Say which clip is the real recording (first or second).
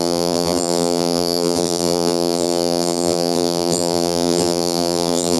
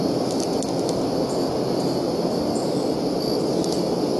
second